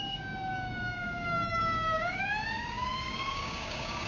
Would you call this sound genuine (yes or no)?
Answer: no